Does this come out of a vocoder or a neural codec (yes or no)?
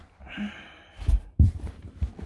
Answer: no